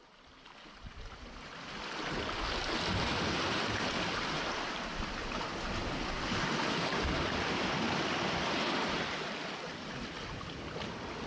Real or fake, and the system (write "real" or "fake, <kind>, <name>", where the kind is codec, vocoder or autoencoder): real